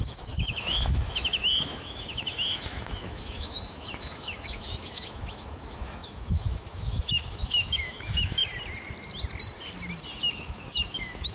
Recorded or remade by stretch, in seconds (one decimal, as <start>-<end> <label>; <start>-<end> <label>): 0.0-8.4 remade; 8.4-10.2 recorded; 10.2-11.3 remade